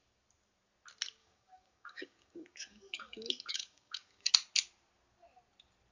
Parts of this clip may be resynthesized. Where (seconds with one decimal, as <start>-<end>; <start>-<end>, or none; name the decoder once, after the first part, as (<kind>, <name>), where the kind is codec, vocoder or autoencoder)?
1.2-4.3 (codec, DAC)